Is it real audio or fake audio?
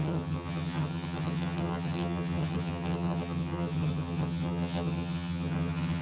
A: fake